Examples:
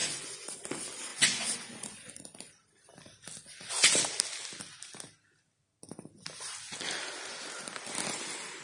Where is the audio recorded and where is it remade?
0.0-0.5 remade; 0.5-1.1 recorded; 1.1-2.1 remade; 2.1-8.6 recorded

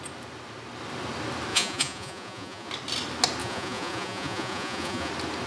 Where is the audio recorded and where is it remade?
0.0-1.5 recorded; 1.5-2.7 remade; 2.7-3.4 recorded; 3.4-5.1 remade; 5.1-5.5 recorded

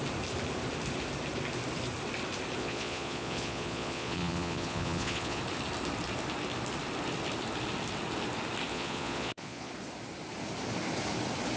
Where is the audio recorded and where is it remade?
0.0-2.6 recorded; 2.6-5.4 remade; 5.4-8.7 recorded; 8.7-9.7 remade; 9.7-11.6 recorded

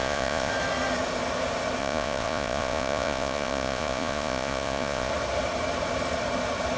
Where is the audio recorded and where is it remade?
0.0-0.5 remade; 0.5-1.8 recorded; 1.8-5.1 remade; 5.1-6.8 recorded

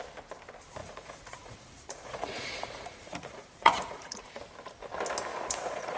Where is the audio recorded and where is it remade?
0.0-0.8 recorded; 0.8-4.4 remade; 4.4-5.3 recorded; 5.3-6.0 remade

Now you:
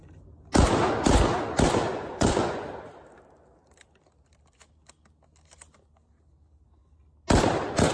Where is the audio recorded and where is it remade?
0.0-1.9 recorded; 1.9-2.7 remade; 2.7-7.9 recorded